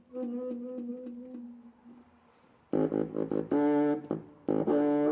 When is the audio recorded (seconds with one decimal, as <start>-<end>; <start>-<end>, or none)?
0.0-5.1